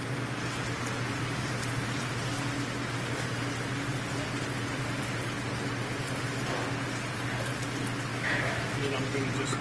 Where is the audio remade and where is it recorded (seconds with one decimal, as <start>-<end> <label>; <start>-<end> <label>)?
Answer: 0.0-8.1 recorded; 8.1-8.7 remade; 8.7-9.6 recorded